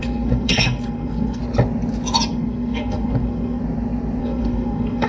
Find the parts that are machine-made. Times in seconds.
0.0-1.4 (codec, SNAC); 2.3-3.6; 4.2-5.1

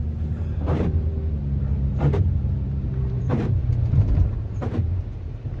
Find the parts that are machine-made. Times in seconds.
0.0-1.1 (vocoder, BigVGAN v2); 1.9-3.6; 4.2-5.6

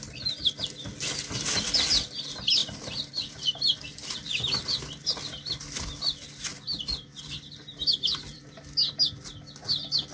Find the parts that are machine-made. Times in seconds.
2.6-4.3 (vocoder, BigVGAN v2); 6.5-8.4

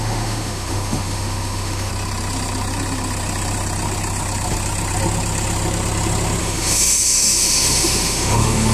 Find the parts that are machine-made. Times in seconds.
0.0-1.9 (autoencoder, DAC-VAE); 6.4-8.7

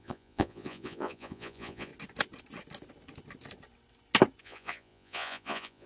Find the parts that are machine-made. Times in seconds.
0.0-1.9 (vocoder, Vocos); 4.4-5.9